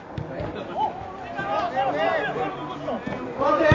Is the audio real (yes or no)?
yes